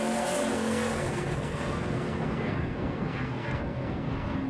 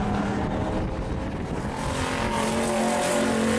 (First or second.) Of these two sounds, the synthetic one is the first